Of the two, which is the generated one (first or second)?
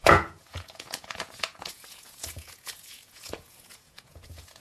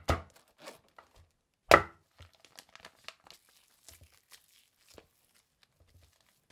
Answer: first